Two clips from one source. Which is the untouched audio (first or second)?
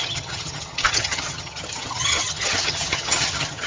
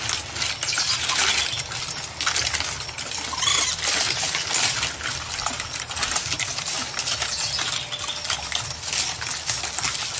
second